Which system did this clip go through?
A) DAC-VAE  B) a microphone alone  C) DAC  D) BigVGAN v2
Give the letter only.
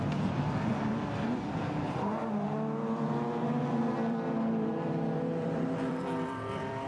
D